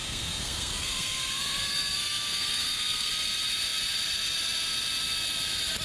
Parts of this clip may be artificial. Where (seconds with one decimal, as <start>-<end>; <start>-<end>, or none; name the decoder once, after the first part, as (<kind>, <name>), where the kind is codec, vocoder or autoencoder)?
0.0-3.1 (codec, SNAC)

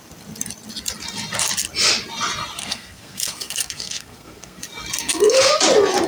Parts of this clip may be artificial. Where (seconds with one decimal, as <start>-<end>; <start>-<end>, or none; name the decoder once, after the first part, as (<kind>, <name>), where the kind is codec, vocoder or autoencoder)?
2.6-4.6 (codec, SNAC); 5.0-5.5

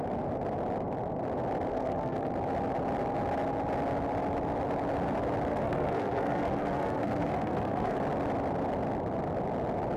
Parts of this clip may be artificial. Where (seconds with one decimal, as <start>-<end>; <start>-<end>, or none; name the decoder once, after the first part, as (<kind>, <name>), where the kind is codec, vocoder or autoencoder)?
1.7-2.3 (codec, SNAC); 5.5-8.0